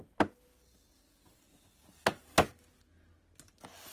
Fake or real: real